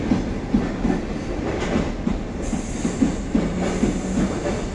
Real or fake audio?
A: real